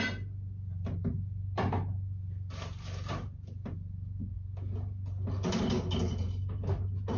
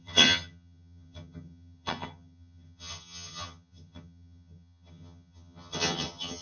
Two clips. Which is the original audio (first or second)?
first